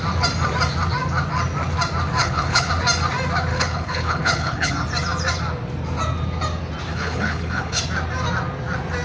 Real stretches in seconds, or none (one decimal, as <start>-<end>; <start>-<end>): 0.0-2.2; 2.7-3.5; 4.7-6.9; 7.8-9.0